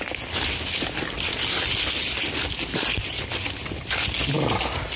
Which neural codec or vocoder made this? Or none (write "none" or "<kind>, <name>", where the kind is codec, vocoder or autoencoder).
none